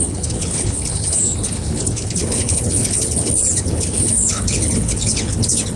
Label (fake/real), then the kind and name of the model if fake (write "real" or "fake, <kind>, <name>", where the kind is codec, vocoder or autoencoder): fake, codec, HILCodec